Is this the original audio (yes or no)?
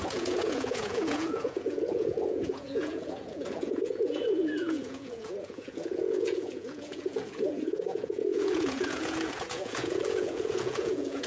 no